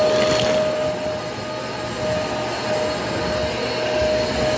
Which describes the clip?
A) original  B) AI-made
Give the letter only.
A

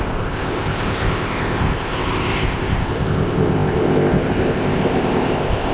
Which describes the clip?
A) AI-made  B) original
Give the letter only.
A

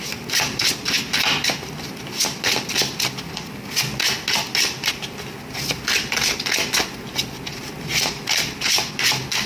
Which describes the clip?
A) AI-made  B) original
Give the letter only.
B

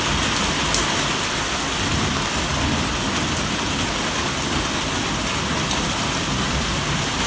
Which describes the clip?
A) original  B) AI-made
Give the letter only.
A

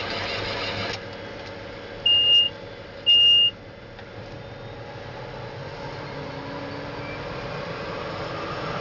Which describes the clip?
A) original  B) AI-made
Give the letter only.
A